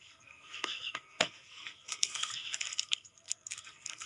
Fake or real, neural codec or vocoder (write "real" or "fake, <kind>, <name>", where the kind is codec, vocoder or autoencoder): fake, codec, SNAC